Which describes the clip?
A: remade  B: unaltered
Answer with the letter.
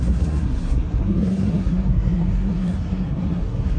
A